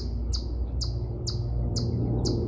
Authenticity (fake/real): real